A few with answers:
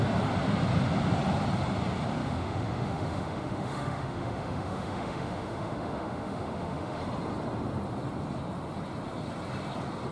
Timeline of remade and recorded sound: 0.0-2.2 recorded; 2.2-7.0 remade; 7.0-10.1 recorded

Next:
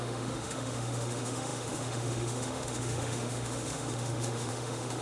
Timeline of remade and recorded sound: 0.0-5.0 remade